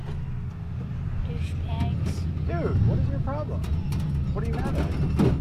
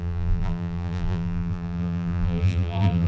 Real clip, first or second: first